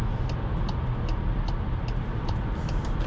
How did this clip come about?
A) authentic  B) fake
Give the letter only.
A